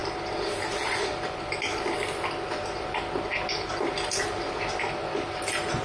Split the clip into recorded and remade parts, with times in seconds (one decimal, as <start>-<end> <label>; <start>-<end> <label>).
0.0-5.8 recorded